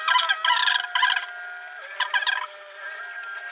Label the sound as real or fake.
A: real